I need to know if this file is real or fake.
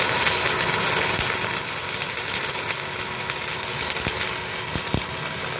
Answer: real